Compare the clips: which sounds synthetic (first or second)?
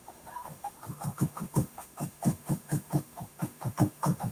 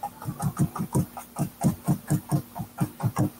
first